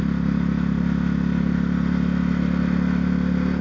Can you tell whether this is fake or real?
real